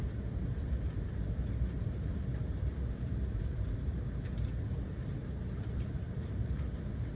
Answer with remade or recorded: remade